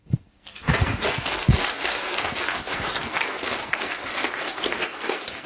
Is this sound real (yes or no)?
no